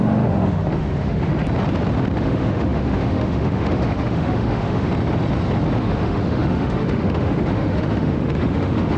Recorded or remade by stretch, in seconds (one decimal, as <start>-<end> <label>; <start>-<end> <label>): 0.0-1.3 remade; 1.3-2.2 recorded; 2.2-4.9 remade; 4.9-5.8 recorded; 5.8-9.0 remade